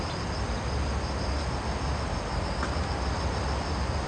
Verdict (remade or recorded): recorded